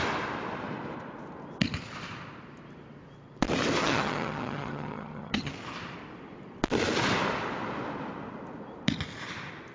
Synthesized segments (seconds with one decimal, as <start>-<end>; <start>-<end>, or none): 3.8-5.5